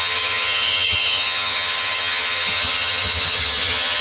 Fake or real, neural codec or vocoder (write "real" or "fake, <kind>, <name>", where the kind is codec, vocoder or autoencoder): fake, vocoder, HiFi-GAN